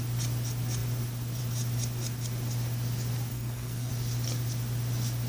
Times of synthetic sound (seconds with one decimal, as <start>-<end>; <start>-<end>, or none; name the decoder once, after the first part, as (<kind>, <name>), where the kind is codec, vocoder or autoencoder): 3.3-3.9 (codec, SNAC)